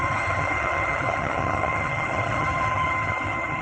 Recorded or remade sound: remade